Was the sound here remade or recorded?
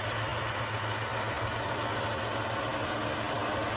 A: recorded